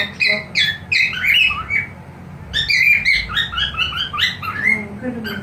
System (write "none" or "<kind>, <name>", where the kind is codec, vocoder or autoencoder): none